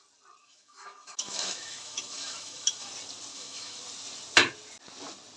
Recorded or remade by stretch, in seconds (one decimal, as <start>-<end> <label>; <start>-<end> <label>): 0.0-0.4 recorded; 0.4-2.9 remade; 2.9-3.3 recorded; 3.3-3.8 remade; 3.8-5.4 recorded